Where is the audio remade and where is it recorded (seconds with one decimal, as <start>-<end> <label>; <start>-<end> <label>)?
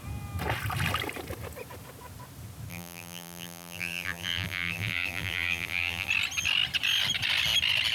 0.0-2.7 recorded; 2.7-6.1 remade; 6.1-7.9 recorded